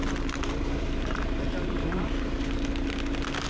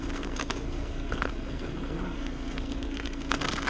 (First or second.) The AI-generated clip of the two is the second